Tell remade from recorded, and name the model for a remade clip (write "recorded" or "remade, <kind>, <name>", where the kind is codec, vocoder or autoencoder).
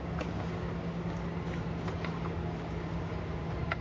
remade, codec, DAC